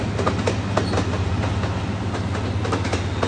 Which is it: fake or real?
real